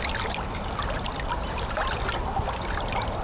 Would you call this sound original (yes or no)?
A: yes